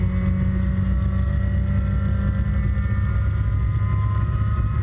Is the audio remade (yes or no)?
no